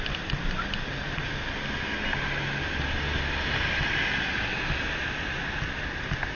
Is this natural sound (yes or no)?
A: yes